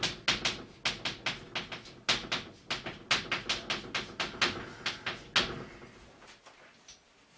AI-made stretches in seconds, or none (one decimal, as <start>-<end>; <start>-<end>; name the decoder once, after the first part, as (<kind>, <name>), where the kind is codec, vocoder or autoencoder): none